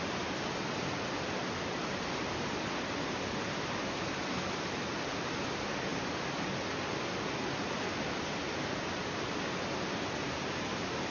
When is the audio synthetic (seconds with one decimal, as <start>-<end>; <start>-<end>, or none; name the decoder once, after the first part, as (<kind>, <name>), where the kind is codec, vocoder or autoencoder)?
none